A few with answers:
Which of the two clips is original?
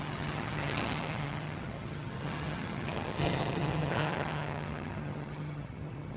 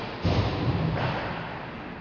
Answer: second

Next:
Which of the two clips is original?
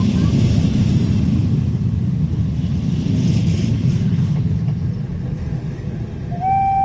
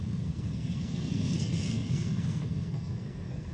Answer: first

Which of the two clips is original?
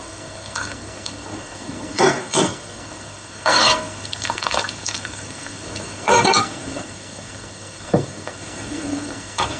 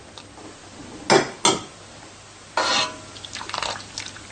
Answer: second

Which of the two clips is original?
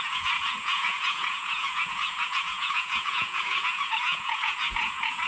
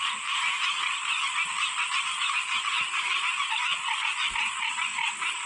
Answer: second